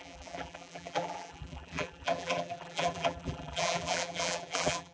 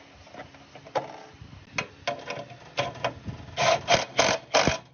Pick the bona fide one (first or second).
second